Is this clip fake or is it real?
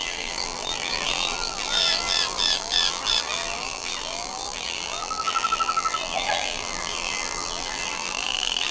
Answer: fake